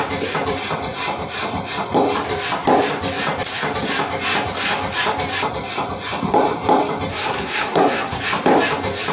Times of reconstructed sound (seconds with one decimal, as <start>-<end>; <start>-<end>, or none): 7.1-8.2